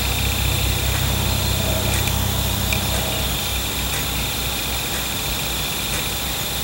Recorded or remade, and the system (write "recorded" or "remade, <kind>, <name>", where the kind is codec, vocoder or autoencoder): recorded